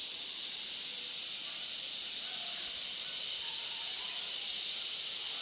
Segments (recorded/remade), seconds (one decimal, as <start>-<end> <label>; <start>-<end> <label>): 0.0-5.4 recorded